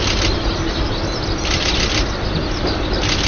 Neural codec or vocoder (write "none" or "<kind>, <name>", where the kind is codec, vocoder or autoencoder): none